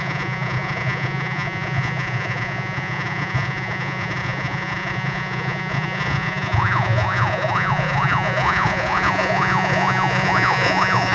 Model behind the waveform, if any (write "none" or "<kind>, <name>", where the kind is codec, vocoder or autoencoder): vocoder, Vocos